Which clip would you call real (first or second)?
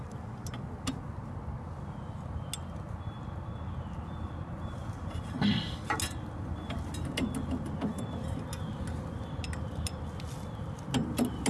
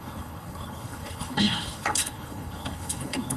first